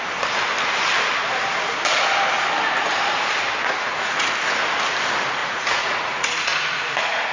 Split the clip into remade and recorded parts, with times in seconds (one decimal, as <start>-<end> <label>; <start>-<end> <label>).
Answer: 0.0-3.6 recorded; 3.6-4.3 remade; 4.3-5.4 recorded; 5.4-6.8 remade; 6.8-7.3 recorded